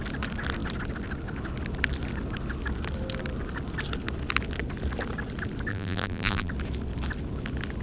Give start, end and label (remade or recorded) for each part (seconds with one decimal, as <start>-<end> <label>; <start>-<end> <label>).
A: 0.0-5.7 recorded; 5.7-6.5 remade; 6.5-7.8 recorded